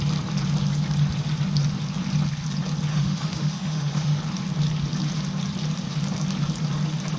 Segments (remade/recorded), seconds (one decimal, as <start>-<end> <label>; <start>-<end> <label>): 0.0-2.9 recorded; 2.9-4.2 remade; 4.2-7.2 recorded